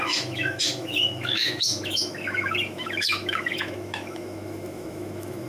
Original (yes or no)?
no